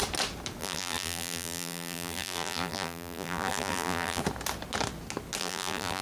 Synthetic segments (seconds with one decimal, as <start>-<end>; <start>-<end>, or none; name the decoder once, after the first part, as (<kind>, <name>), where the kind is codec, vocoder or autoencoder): 0.6-4.2 (vocoder, BigVGAN v2); 5.4-6.0